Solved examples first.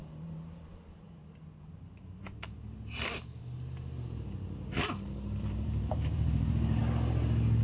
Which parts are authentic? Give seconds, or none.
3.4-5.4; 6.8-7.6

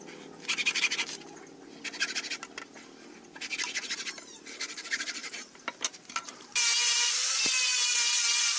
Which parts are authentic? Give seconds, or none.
0.0-5.2; 7.4-8.6

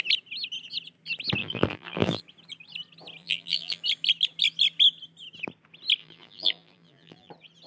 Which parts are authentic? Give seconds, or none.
0.0-1.4; 2.2-3.2; 3.8-6.0; 7.3-7.7

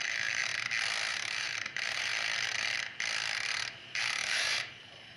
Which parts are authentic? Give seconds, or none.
0.5-1.1; 2.1-3.7

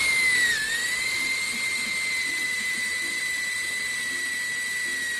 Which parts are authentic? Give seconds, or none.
0.0-0.8; 3.2-5.2